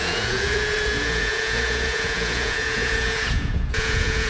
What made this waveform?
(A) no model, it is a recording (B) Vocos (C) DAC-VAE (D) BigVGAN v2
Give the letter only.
B